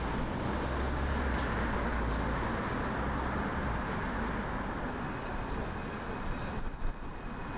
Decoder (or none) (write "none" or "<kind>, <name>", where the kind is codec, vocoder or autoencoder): none